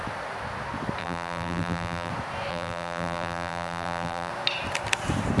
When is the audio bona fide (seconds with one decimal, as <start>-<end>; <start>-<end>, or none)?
0.0-1.0; 2.1-2.5; 4.3-5.4